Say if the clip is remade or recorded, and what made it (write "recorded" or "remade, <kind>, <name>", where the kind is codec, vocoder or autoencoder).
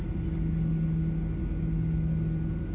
recorded